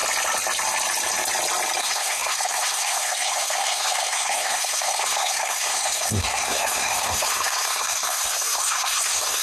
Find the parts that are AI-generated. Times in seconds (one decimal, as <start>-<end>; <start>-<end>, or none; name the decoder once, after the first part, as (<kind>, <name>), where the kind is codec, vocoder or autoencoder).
1.8-9.4 (codec, SNAC)